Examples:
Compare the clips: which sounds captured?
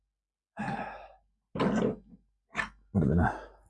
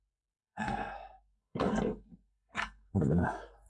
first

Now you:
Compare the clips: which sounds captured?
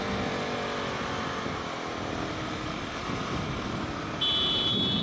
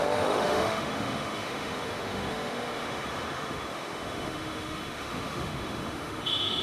first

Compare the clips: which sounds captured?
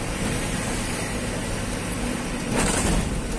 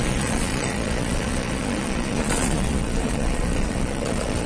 first